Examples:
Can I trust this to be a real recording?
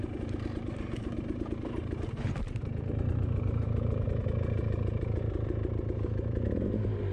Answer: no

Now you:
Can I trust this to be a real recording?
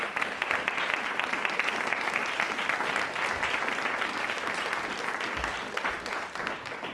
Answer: yes